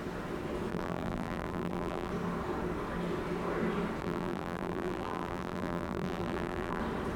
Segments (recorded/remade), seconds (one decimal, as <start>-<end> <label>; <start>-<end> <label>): 0.0-0.7 recorded; 0.7-2.1 remade; 2.1-4.0 recorded; 4.0-6.8 remade; 6.8-7.2 recorded